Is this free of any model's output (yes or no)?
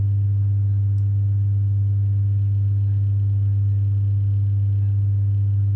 yes